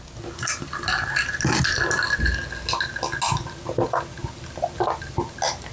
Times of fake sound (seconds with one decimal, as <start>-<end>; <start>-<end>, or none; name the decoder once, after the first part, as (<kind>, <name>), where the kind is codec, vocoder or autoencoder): none